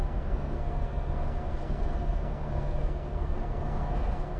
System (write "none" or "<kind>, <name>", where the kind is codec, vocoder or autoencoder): codec, SNAC